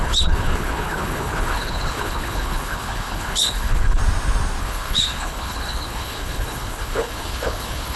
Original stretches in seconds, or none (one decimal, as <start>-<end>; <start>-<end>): 4.0-4.6